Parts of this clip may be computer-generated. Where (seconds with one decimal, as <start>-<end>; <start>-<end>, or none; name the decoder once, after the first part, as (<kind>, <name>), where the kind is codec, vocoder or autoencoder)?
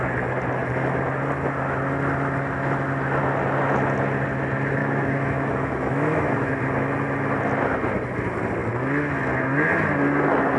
4.8-6.5 (autoencoder, DAC-VAE)